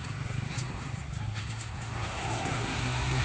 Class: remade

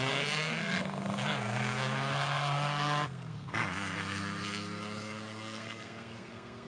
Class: remade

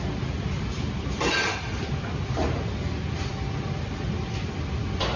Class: recorded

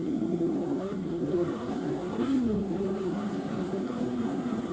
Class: remade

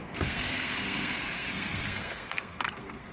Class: remade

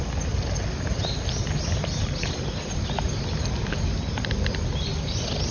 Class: recorded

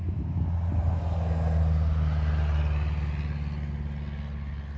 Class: recorded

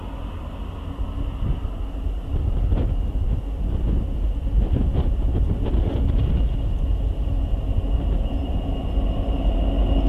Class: recorded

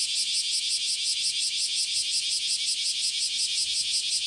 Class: recorded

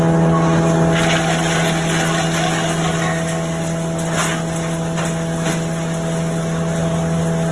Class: recorded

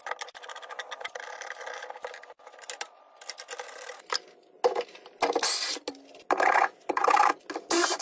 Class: recorded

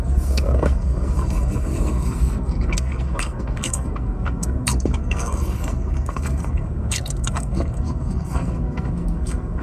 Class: remade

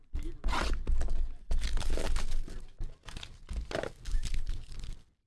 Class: recorded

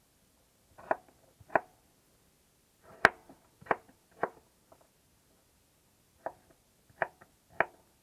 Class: recorded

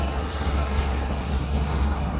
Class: remade